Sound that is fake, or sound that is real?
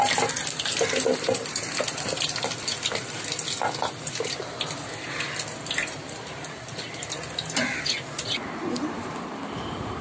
real